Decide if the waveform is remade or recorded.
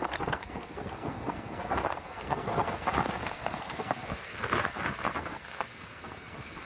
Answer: remade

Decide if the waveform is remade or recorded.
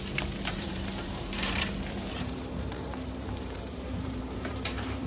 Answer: remade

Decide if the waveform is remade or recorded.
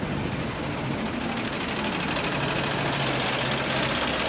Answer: recorded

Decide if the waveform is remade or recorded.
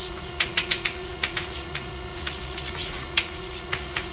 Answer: remade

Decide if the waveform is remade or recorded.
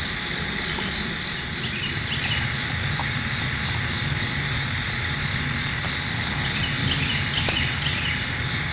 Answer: recorded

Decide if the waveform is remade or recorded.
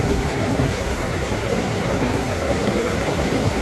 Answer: remade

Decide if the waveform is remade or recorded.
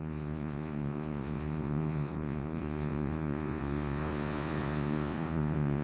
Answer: remade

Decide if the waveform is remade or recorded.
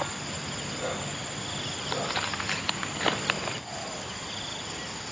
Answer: recorded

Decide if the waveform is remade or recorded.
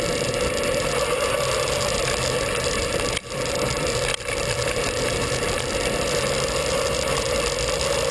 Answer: recorded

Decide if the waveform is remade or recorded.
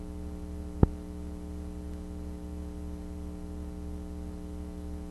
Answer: recorded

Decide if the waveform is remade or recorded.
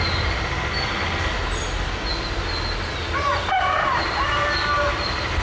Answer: recorded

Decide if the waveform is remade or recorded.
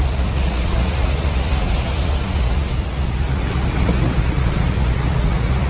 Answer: remade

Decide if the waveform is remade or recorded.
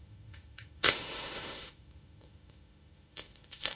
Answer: remade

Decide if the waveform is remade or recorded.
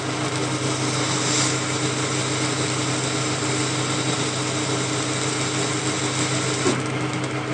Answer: recorded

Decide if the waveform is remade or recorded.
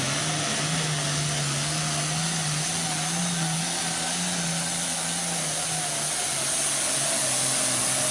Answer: recorded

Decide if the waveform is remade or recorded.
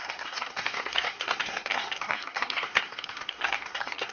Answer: remade